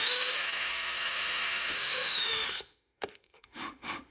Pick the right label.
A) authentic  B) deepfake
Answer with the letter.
B